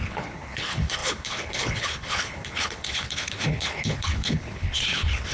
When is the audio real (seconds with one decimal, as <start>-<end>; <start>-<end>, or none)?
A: none